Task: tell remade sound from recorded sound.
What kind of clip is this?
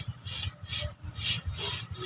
recorded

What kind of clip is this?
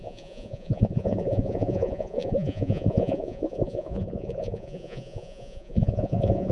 remade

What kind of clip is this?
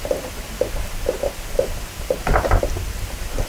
recorded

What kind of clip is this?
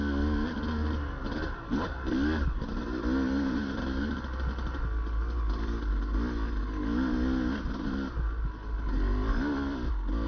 recorded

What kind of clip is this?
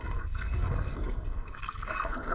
remade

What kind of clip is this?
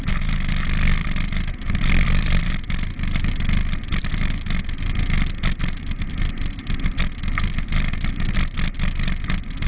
recorded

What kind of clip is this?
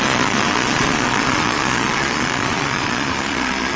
remade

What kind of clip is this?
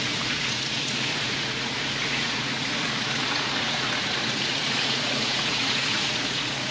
remade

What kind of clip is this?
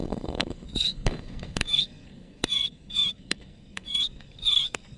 remade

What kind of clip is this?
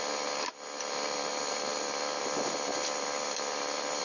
recorded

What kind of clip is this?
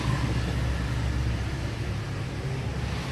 recorded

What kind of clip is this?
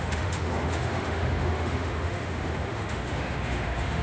remade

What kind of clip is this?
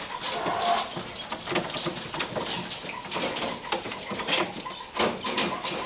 recorded